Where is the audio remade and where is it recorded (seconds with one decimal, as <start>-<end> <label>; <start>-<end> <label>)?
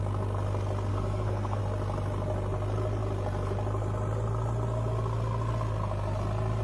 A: 0.0-0.9 recorded; 0.9-1.6 remade; 1.6-6.6 recorded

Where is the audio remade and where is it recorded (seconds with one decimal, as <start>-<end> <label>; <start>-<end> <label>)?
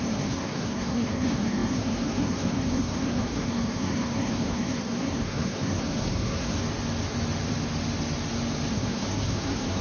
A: 0.0-6.6 remade; 6.6-8.7 recorded; 8.7-9.8 remade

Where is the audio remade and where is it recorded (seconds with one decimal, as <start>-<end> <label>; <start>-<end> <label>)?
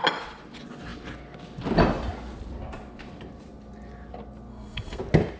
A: 0.0-4.5 recorded; 4.5-5.0 remade; 5.0-5.4 recorded